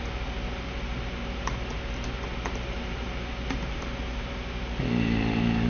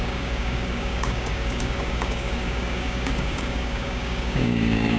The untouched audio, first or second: first